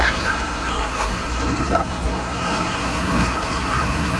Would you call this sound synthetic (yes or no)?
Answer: yes